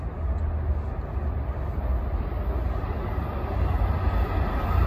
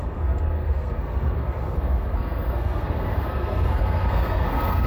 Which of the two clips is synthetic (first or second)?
second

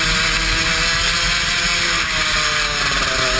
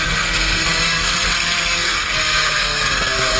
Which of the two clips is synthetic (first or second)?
second